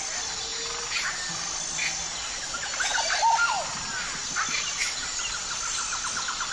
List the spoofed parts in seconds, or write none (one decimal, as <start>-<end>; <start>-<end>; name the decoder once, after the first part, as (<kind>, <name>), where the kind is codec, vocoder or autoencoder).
none